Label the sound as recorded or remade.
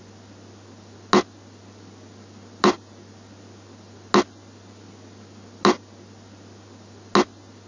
recorded